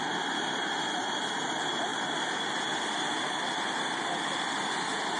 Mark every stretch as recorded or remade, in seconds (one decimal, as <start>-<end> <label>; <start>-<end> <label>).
0.0-1.9 recorded; 1.9-2.4 remade; 2.4-5.2 recorded